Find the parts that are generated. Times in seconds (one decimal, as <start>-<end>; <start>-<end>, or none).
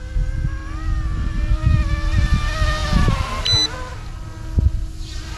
none